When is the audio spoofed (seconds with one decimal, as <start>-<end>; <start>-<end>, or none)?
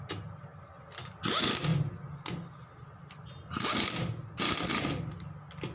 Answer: none